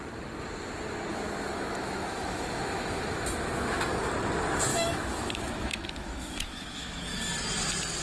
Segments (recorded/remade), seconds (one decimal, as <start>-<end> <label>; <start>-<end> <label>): 0.0-1.1 recorded; 1.1-4.1 remade; 4.1-4.7 recorded; 4.7-7.3 remade; 7.3-8.0 recorded